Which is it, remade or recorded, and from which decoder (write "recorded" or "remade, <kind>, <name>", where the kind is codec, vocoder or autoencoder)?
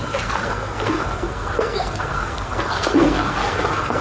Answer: remade, codec, SNAC